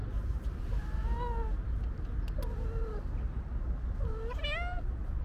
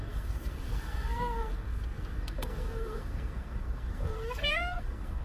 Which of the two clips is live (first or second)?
first